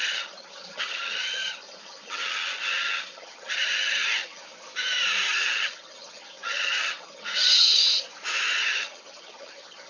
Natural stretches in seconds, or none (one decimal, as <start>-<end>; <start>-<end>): 4.4-5.3; 7.8-8.6